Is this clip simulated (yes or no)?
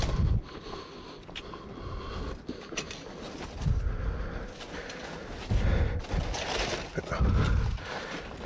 no